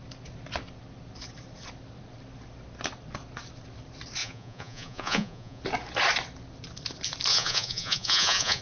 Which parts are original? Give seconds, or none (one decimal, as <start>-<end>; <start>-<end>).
0.0-4.2; 5.6-7.3